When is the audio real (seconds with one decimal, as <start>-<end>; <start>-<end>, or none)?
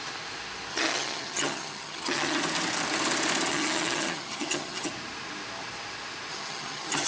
0.0-0.7; 2.4-3.5; 4.9-6.3